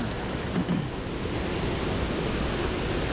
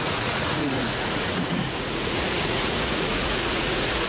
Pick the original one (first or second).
first